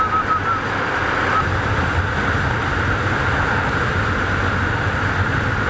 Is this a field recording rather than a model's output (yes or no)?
yes